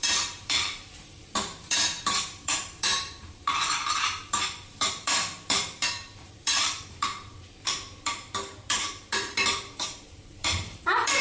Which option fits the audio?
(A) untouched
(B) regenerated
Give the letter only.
B